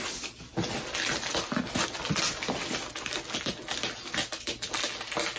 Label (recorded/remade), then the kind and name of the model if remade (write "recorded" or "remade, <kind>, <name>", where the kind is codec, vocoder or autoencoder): recorded